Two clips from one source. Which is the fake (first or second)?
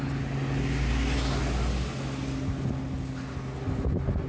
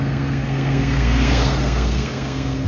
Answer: second